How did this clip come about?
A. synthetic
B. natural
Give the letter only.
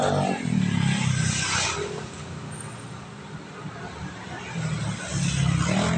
B